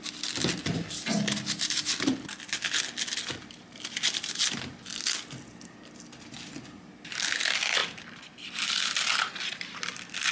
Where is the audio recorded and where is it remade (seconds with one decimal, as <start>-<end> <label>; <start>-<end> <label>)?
0.0-7.8 recorded; 7.8-8.8 remade; 8.8-10.3 recorded